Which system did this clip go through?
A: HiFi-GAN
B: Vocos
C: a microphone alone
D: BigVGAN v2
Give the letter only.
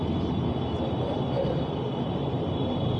C